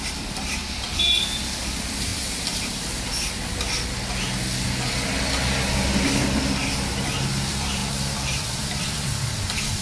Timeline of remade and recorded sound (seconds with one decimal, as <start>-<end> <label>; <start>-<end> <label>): 0.0-2.1 remade; 2.1-7.2 recorded; 7.2-9.8 remade